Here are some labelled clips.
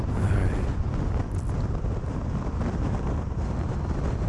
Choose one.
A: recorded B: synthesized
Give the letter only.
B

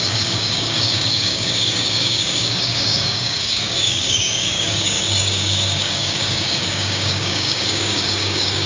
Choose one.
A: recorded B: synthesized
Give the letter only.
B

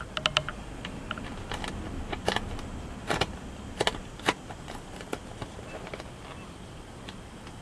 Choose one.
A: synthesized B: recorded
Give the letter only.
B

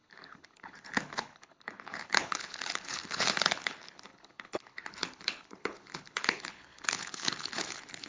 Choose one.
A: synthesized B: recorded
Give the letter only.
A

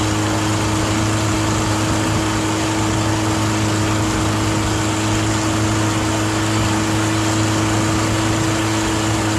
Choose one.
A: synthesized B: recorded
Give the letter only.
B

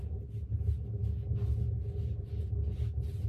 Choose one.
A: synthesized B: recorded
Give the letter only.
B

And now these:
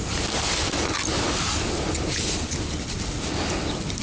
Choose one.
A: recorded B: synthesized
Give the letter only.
A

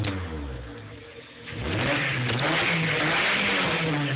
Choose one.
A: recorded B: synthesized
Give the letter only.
A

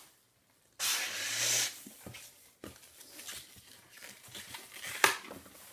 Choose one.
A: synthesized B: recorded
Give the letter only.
B